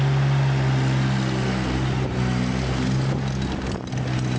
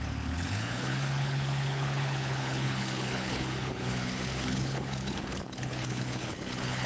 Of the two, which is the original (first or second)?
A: first